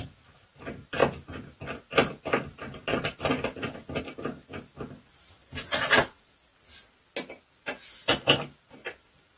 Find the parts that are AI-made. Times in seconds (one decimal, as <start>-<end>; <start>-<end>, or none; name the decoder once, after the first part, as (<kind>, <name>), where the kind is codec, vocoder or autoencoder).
0.0-1.0 (vocoder, BigVGAN v2); 1.7-6.5; 7.5-9.4